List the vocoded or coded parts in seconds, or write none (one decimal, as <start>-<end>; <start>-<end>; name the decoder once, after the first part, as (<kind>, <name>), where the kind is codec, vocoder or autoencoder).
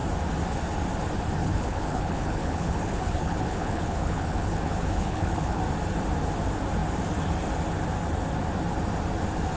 1.4-5.6 (codec, HILCodec)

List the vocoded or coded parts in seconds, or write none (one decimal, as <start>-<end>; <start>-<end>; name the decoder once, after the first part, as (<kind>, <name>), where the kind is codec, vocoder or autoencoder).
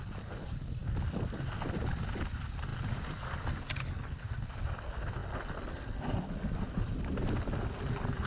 none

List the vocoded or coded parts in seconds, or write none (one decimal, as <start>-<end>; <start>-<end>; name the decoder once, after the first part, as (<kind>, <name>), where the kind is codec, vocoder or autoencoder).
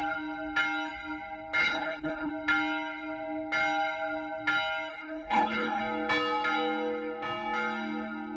1.6-2.3 (codec, HILCodec); 4.9-5.8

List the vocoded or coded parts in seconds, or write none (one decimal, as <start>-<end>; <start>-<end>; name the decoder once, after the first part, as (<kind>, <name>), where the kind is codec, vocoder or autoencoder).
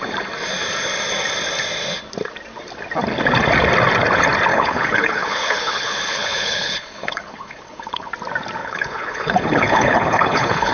4.5-8.1 (codec, HILCodec); 8.6-10.7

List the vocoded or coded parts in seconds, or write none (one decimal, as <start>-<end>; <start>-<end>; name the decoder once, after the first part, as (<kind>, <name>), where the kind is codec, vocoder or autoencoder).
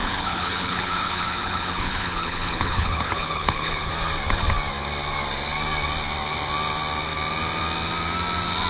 0.0-3.9 (codec, HILCodec)